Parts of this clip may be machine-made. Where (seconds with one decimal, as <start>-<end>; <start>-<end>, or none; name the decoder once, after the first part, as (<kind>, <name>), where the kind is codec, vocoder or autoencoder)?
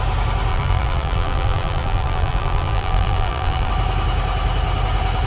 0.5-3.7 (vocoder, BigVGAN v2)